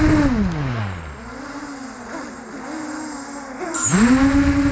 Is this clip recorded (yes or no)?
yes